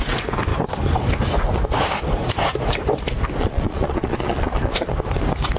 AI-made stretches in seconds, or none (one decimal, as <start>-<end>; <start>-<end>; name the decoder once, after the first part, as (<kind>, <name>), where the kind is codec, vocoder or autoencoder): 3.4-4.9 (vocoder, Vocos)